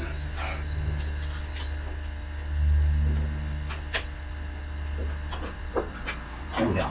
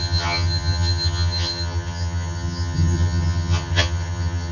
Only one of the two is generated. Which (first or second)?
second